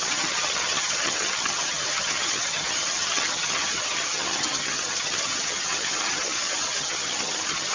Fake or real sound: fake